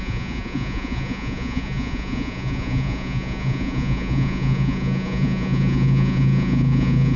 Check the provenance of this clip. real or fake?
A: fake